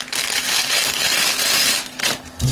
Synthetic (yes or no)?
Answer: no